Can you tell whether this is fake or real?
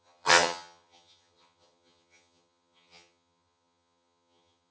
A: fake